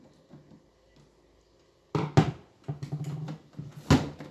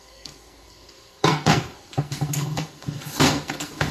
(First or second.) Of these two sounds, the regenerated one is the second